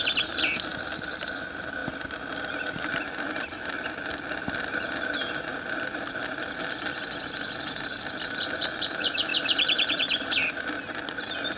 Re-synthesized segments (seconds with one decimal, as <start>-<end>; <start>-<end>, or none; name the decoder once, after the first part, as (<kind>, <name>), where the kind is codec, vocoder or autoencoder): none